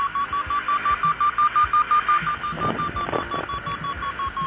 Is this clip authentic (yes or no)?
yes